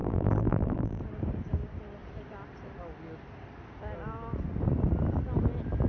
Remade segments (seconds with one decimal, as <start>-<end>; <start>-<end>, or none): 0.0-1.0